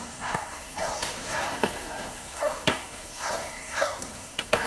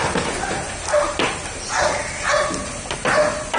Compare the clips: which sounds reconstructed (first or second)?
first